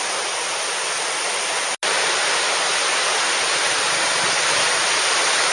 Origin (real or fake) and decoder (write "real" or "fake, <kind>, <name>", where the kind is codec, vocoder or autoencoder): real